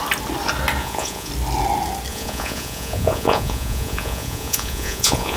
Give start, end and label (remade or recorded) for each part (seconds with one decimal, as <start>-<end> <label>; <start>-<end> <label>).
0.0-0.8 recorded; 0.8-1.3 remade; 1.3-2.1 recorded; 2.1-5.4 remade